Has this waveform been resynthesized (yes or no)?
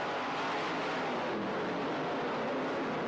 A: no